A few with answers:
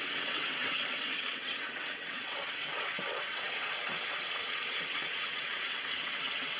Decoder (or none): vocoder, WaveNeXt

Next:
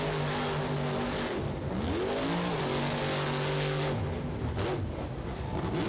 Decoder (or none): none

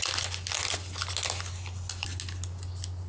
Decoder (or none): none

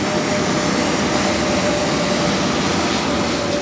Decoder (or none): none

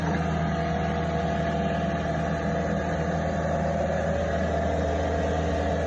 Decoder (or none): none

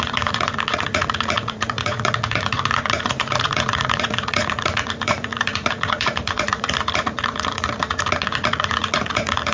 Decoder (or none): vocoder, Vocos